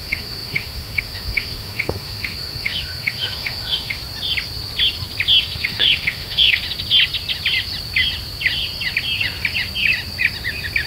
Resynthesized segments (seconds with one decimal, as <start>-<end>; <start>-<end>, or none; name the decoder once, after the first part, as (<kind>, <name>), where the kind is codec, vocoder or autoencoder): 0.0-4.0 (autoencoder, DAC-VAE); 5.4-6.6